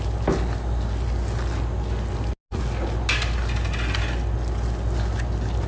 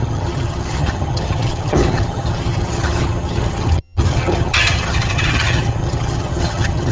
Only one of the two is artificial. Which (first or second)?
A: second